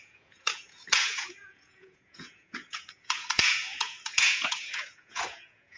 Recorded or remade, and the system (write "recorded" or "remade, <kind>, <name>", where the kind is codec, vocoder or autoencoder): remade, vocoder, Vocos